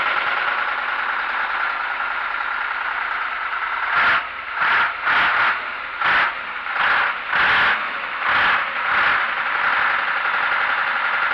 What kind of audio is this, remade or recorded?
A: recorded